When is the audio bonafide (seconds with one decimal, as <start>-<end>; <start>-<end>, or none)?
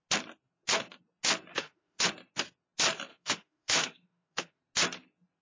0.0-1.5; 2.0-3.1; 4.6-5.4